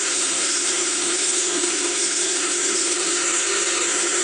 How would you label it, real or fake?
fake